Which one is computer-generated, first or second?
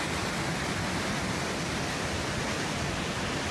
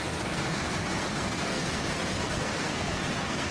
second